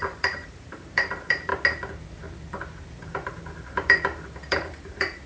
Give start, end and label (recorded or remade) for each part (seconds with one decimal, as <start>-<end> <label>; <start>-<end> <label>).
0.0-1.5 remade; 1.5-3.0 recorded; 3.0-5.3 remade